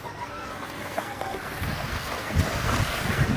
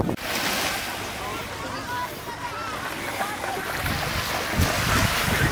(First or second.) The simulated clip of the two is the first